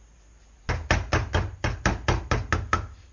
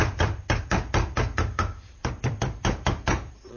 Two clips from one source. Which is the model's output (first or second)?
second